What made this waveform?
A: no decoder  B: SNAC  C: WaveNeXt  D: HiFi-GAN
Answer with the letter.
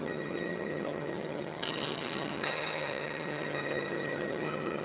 D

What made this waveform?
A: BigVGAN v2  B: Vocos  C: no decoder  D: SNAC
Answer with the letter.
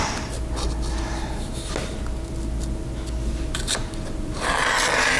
C